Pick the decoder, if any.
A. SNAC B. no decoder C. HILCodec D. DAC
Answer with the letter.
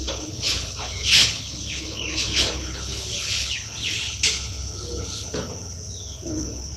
C